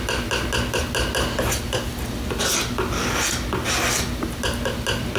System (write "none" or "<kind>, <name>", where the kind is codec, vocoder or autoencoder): none